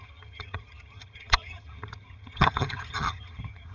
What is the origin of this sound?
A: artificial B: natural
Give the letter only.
A